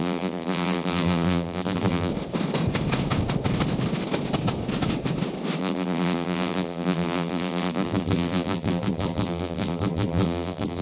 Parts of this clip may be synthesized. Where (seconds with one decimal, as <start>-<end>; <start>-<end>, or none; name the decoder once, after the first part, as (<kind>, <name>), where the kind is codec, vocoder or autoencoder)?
0.0-2.1 (vocoder, BigVGAN v2); 5.6-10.8